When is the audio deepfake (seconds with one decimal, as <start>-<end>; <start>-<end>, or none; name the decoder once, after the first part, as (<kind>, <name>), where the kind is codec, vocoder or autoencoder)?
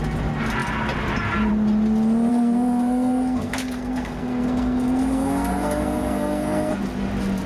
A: 2.3-6.8 (codec, SNAC)